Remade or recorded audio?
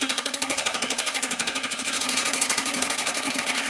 remade